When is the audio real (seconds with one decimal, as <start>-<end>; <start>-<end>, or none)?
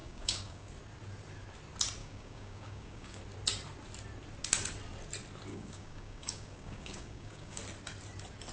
0.7-2.0; 3.2-5.5; 7.6-8.5